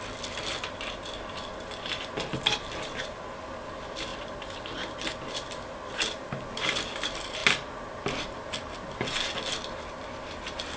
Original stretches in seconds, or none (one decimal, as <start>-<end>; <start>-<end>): 0.0-10.8